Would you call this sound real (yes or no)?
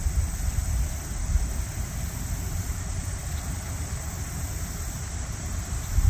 yes